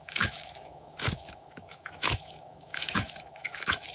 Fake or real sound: fake